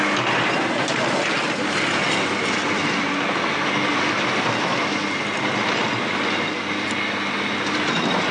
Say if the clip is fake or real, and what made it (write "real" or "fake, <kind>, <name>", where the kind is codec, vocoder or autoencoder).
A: real